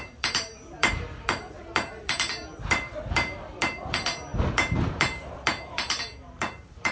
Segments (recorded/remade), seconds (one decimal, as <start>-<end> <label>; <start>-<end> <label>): 0.0-6.9 remade